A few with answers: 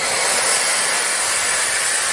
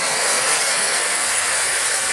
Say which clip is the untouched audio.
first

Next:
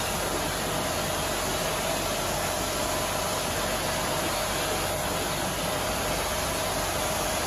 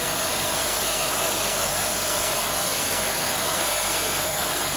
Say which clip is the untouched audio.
first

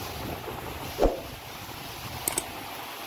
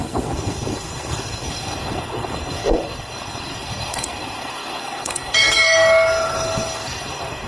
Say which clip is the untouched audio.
first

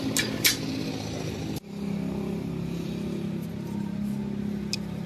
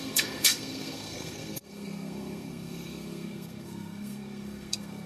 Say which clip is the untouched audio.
first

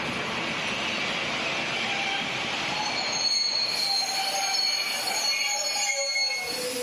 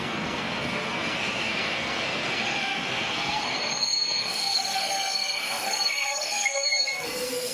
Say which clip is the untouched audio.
first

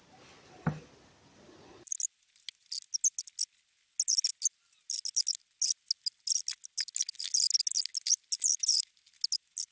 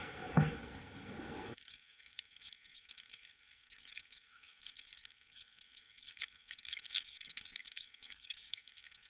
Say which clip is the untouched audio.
first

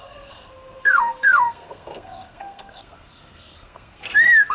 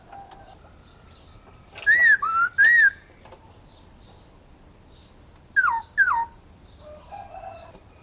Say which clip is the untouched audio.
second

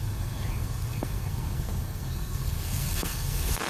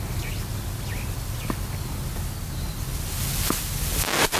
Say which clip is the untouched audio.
second